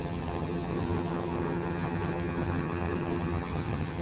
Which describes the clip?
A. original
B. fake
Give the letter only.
B